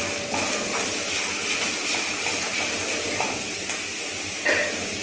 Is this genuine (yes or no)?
yes